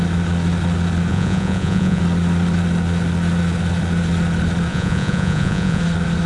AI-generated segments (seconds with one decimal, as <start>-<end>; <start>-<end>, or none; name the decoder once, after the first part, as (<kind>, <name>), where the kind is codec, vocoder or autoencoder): 1.1-2.0 (vocoder, Vocos); 4.7-5.8